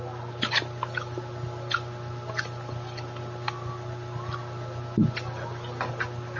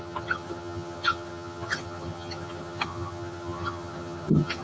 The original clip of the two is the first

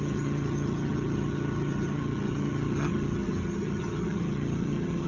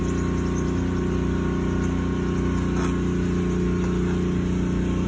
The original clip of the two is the second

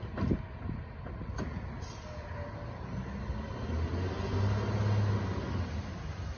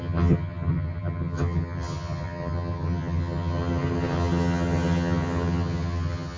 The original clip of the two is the first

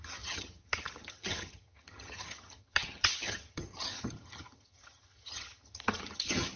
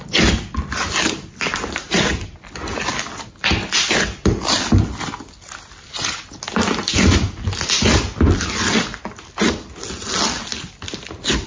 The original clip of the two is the second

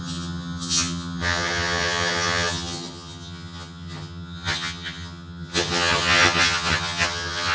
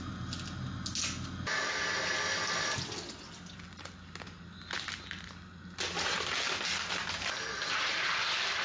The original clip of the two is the second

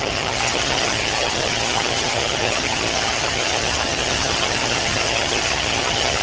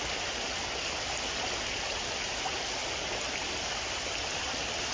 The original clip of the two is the second